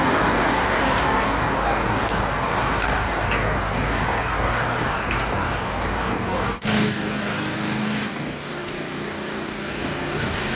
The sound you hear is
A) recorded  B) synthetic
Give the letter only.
B